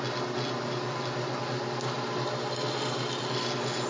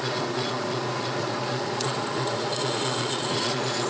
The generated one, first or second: second